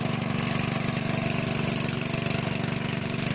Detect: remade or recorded recorded